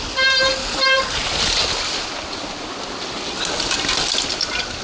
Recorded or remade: recorded